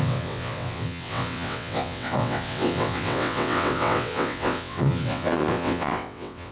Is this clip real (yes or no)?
no